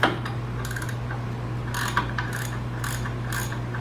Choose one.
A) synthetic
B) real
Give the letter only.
B